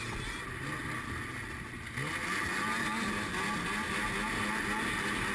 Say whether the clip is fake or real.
real